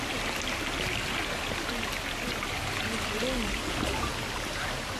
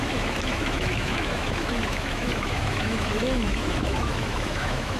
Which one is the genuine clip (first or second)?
first